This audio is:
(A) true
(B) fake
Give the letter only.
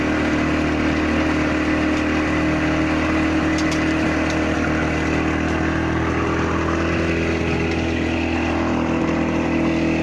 A